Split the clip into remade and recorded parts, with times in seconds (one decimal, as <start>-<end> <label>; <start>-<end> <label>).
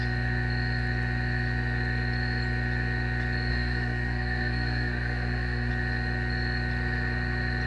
0.0-3.5 recorded; 3.5-5.7 remade; 5.7-7.7 recorded